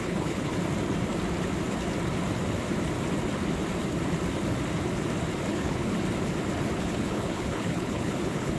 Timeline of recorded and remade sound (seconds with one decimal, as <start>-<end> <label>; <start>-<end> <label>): 0.0-0.5 remade; 0.5-5.5 recorded; 5.5-5.9 remade; 5.9-6.8 recorded; 6.8-8.6 remade